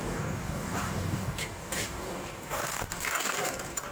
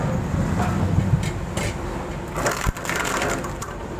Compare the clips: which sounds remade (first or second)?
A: first